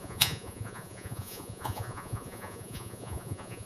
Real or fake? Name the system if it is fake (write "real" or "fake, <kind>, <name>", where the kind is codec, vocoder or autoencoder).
fake, vocoder, Vocos